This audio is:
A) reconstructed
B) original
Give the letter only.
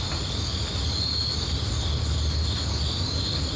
B